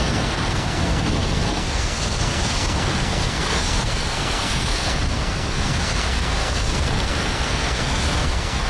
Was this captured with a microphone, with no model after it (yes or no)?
no